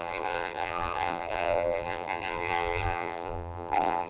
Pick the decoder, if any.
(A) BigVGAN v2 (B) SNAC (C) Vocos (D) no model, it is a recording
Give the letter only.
A